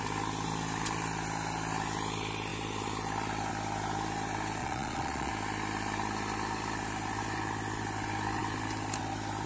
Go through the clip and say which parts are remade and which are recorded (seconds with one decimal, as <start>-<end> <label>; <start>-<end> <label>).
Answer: 0.0-4.6 recorded; 4.6-5.3 remade; 5.3-9.5 recorded